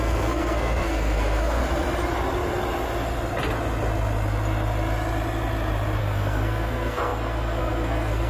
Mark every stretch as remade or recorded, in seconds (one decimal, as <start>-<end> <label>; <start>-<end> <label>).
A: 0.0-1.6 remade; 1.6-6.0 recorded; 6.0-8.3 remade